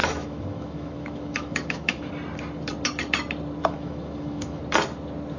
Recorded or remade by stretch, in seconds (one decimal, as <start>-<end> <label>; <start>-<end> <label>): 0.0-2.1 remade; 2.1-3.6 recorded; 3.6-4.6 remade; 4.6-5.4 recorded